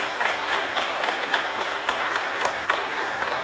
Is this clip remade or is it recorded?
remade